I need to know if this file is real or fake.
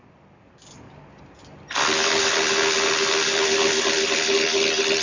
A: real